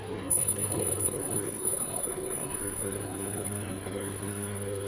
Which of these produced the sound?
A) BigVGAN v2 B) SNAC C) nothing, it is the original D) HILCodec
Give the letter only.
B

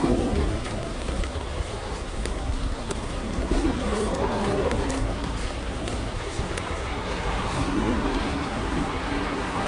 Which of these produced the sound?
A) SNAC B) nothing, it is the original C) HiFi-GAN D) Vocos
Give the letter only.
A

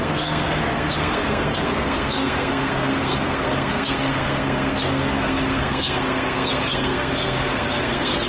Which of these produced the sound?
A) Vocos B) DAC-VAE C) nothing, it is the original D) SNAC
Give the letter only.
D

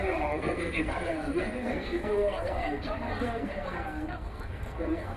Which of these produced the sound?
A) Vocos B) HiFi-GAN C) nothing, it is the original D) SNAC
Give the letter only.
D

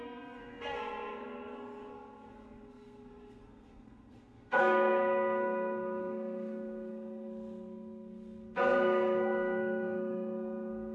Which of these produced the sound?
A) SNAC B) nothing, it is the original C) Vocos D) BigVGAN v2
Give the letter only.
A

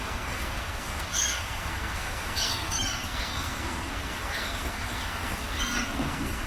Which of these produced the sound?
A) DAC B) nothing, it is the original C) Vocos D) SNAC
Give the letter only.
D